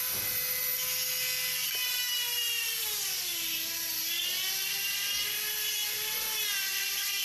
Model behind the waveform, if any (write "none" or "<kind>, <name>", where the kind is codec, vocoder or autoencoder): none